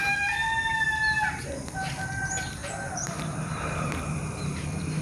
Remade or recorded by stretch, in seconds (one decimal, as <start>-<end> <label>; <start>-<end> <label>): 0.0-5.0 remade